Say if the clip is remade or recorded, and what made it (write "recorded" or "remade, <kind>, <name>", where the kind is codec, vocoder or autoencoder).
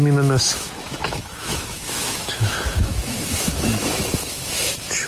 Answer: remade, autoencoder, DAC-VAE